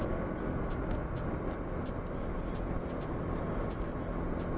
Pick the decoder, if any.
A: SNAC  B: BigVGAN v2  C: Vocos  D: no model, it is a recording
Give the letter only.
D